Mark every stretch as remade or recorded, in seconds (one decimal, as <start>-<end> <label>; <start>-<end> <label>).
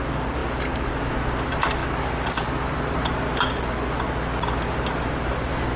0.0-5.8 recorded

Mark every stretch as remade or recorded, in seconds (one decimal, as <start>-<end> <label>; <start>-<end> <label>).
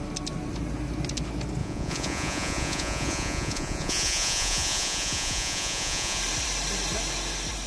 0.0-1.6 recorded; 1.6-6.2 remade; 6.2-7.7 recorded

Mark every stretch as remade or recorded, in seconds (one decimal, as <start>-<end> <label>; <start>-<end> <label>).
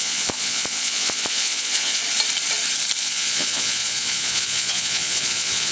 0.0-2.0 remade; 2.0-3.0 recorded; 3.0-5.7 remade